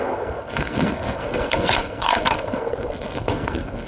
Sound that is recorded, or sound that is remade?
remade